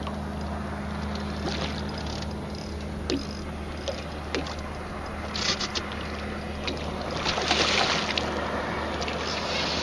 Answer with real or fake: real